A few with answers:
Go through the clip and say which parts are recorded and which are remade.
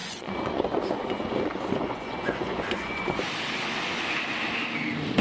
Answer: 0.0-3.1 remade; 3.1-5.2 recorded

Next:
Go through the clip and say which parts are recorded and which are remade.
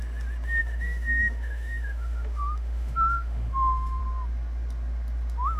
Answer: 0.0-0.6 recorded; 0.6-4.0 remade; 4.0-5.6 recorded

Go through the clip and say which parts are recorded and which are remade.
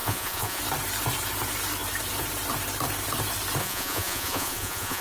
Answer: 0.0-0.6 remade; 0.6-3.6 recorded; 3.6-5.0 remade